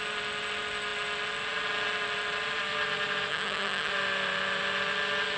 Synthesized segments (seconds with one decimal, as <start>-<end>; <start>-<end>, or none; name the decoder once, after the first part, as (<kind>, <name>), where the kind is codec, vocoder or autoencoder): 3.3-3.9 (vocoder, HiFi-GAN)